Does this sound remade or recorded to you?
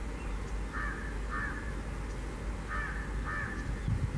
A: recorded